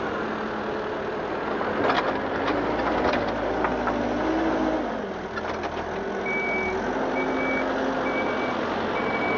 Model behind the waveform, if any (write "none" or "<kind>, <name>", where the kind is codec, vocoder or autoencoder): none